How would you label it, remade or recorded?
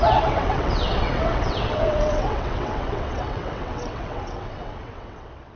remade